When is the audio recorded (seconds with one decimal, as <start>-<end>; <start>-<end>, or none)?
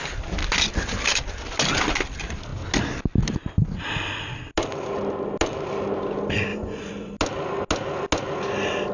0.0-6.5; 7.1-8.9